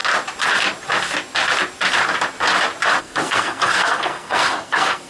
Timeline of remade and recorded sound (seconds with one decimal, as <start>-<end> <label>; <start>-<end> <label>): 0.0-3.0 recorded; 3.0-5.1 remade

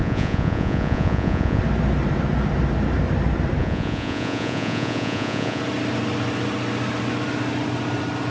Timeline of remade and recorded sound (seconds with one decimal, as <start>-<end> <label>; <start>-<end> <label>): 0.0-1.6 remade; 1.6-3.6 recorded; 3.6-5.6 remade; 5.6-8.3 recorded

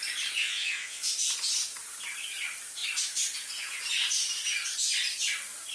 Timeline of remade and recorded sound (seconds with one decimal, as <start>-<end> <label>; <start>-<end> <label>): 0.0-0.4 recorded; 0.4-1.1 remade; 1.1-5.7 recorded

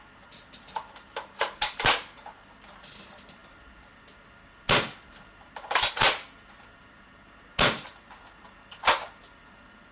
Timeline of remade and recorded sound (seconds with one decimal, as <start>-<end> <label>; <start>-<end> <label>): 0.0-9.9 recorded

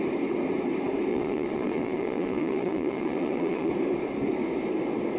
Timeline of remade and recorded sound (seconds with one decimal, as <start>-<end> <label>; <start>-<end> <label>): 0.0-1.1 recorded; 1.1-3.7 remade; 3.7-5.2 recorded

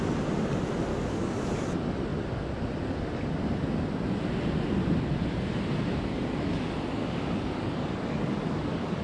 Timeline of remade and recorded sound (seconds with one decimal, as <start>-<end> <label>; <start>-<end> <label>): 0.0-0.9 recorded; 0.9-1.5 remade; 1.5-6.1 recorded; 6.1-9.0 remade

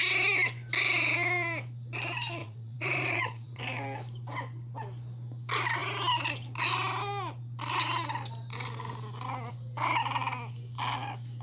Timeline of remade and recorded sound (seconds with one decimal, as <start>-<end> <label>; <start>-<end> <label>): 0.0-2.4 recorded; 2.4-3.6 remade; 3.6-11.4 recorded